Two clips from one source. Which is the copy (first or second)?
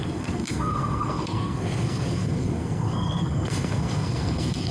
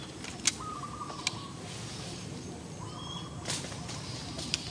first